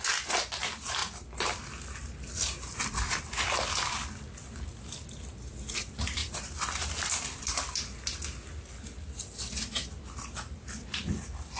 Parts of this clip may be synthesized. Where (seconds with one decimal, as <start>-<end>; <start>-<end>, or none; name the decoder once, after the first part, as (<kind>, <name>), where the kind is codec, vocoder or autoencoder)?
none